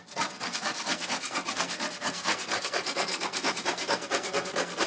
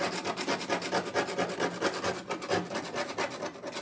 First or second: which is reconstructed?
first